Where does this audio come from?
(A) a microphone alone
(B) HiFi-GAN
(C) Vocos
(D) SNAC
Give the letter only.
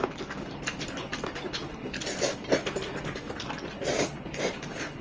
A